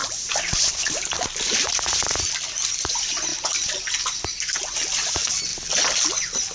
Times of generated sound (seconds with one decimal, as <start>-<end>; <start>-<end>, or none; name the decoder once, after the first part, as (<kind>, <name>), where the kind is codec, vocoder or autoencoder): 0.0-1.4 (vocoder, BigVGAN v2)